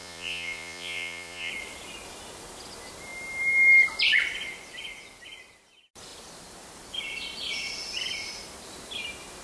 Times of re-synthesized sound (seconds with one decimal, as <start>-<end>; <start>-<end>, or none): 0.0-1.5